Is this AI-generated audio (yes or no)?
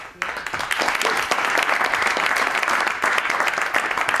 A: no